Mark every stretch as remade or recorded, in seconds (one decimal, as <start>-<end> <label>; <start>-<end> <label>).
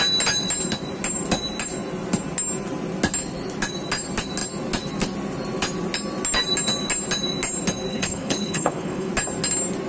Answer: 0.0-7.9 recorded; 7.9-9.1 remade; 9.1-9.9 recorded